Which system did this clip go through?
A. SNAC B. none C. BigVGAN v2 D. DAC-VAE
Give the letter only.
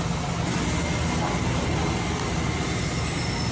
B